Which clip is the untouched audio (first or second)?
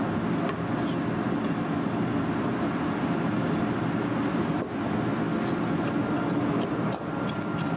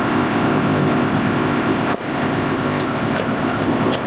first